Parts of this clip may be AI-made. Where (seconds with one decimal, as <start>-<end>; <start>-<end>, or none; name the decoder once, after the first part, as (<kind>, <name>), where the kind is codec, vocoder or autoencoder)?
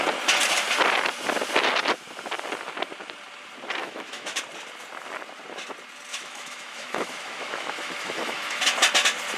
3.8-4.4 (autoencoder, DAC-VAE); 6.1-8.6